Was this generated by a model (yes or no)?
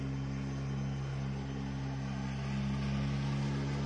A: no